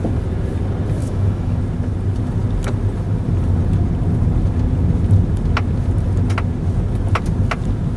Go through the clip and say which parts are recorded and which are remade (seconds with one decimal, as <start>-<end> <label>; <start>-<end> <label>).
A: 0.0-1.0 recorded; 1.0-1.6 remade; 1.6-8.0 recorded